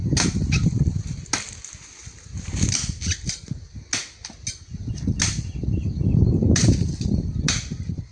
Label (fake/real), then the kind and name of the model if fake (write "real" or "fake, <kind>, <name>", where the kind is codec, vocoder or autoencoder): real